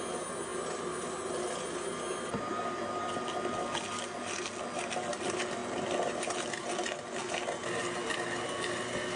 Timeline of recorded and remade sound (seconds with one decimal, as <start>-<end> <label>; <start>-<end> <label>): 0.0-9.2 recorded